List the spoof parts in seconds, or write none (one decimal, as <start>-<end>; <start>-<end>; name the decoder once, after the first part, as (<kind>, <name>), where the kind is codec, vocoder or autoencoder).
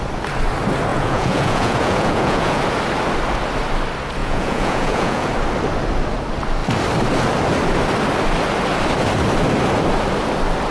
0.9-2.6 (vocoder, Vocos); 4.2-5.3